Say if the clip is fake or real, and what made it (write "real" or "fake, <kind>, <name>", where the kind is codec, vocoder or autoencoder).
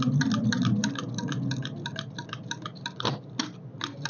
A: real